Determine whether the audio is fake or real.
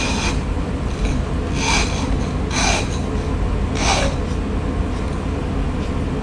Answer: real